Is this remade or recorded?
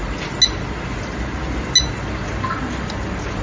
recorded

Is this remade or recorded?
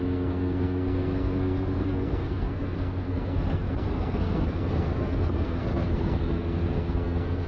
remade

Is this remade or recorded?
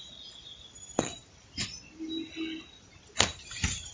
recorded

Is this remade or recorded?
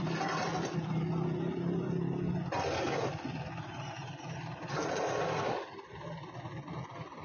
recorded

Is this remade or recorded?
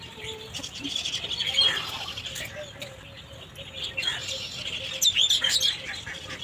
recorded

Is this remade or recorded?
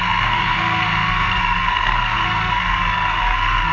remade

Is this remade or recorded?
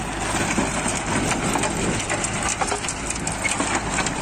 recorded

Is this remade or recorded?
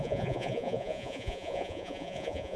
remade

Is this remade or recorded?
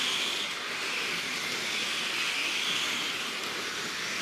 recorded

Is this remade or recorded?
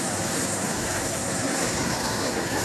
remade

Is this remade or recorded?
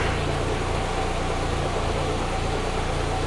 recorded